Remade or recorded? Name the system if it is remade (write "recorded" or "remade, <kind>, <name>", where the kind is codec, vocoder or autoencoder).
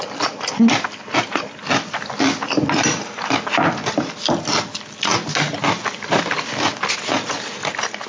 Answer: recorded